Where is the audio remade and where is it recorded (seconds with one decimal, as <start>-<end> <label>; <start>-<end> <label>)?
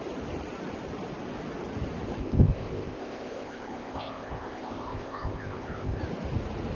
0.0-2.2 recorded; 2.2-6.0 remade; 6.0-6.7 recorded